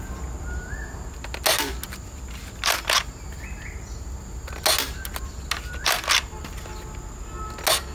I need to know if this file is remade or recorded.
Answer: recorded